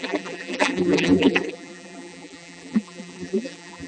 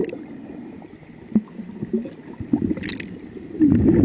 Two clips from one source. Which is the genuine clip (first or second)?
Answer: second